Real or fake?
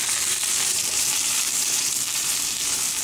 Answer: fake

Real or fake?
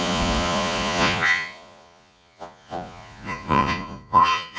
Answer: fake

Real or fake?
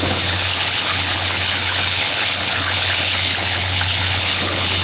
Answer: fake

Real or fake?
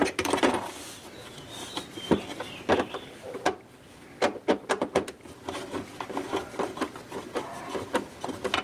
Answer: real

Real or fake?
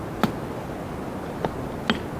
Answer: real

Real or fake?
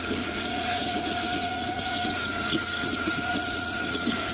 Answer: fake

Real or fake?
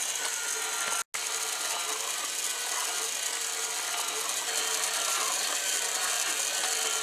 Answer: real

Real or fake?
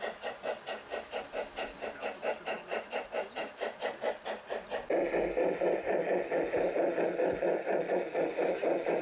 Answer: real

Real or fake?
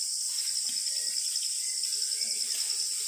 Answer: real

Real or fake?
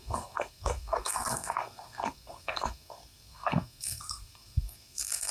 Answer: fake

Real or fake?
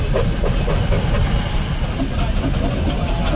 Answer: real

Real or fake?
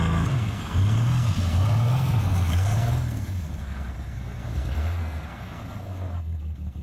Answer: fake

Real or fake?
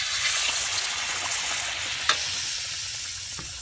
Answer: fake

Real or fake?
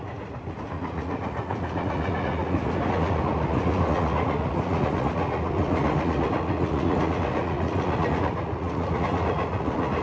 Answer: fake